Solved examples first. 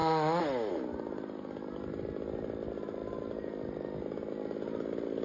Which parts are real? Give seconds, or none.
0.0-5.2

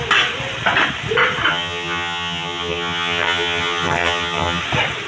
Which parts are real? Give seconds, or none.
0.0-1.5; 4.6-5.1

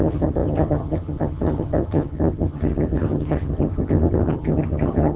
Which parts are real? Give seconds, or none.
none

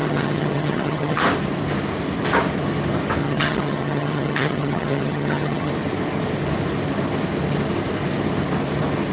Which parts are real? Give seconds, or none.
1.2-3.2; 5.7-9.1

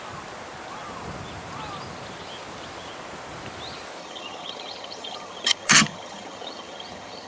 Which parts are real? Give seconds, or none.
0.0-4.0